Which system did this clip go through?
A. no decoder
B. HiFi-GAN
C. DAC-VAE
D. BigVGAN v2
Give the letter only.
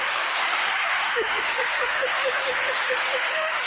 C